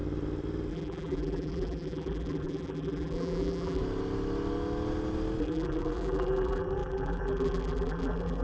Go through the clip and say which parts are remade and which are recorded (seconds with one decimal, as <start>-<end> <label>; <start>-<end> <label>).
0.0-0.7 recorded; 0.7-3.8 remade; 3.8-5.4 recorded; 5.4-8.4 remade